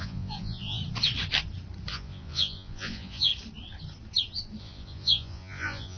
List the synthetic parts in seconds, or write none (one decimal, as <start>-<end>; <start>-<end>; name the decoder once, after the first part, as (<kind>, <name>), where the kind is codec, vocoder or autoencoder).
0.0-0.8 (vocoder, Vocos); 1.9-3.3; 4.6-6.0